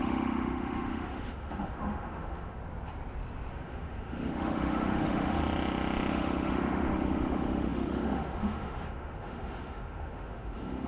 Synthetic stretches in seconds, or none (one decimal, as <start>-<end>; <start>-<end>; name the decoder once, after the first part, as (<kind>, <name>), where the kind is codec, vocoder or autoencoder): 0.0-2.6 (autoencoder, DAC-VAE); 3.5-5.4; 6.1-10.9